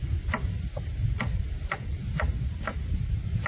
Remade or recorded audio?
recorded